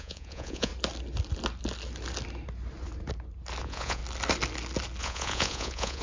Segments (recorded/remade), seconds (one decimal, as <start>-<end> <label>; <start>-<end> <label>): 0.0-0.7 remade; 0.7-3.6 recorded; 3.6-4.0 remade; 4.0-5.0 recorded; 5.0-6.0 remade

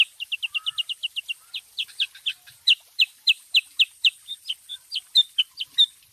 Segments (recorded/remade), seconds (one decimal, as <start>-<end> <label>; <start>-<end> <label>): 0.0-6.1 recorded

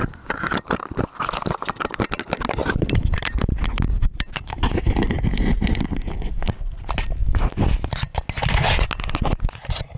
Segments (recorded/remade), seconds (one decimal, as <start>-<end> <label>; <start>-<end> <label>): 0.0-2.0 remade; 2.0-2.6 recorded; 2.6-5.7 remade; 5.7-10.0 recorded

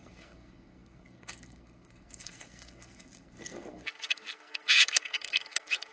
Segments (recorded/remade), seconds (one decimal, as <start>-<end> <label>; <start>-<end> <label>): 0.0-5.9 remade

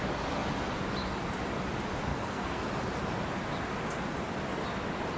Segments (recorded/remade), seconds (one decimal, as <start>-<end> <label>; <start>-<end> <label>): 0.0-2.1 recorded; 2.1-2.6 remade; 2.6-5.2 recorded

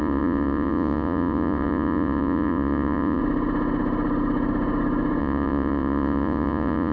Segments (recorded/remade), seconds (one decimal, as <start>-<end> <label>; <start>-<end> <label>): 0.0-3.2 remade; 3.2-5.2 recorded; 5.2-6.9 remade

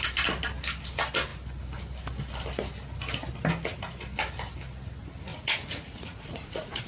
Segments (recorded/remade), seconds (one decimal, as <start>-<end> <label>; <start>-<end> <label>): 0.0-5.3 recorded; 5.3-6.9 remade

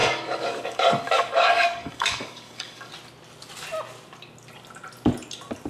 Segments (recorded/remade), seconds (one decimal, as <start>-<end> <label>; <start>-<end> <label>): 0.0-2.9 remade; 2.9-5.7 recorded